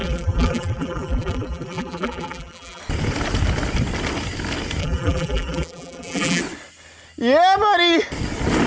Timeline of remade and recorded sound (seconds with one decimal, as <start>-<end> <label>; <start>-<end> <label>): 0.0-2.8 remade; 2.8-4.8 recorded; 4.8-6.4 remade; 6.4-8.7 recorded